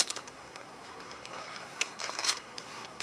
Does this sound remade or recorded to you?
remade